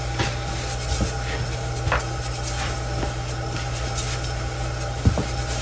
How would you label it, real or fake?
real